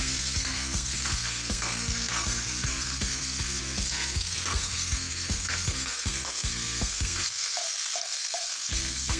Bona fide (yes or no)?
no